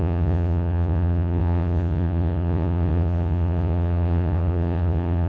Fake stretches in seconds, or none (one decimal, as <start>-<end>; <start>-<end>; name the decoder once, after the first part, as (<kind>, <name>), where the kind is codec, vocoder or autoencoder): 0.0-5.3 (vocoder, Vocos)